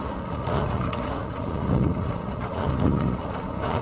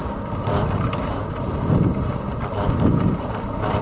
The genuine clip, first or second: second